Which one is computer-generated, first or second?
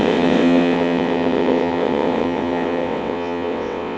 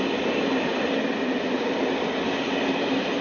first